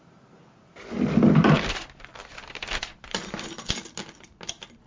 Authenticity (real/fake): real